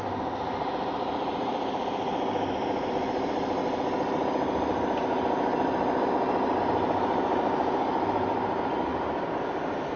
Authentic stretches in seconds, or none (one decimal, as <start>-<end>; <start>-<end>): 3.6-6.6; 8.9-10.0